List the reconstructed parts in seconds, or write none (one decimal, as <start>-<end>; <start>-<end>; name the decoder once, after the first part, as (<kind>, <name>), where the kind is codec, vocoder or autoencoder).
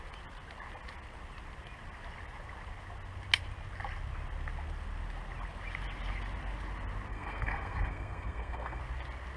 7.1-8.8 (codec, SNAC)